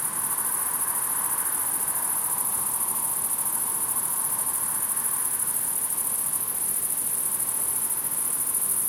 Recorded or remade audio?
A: recorded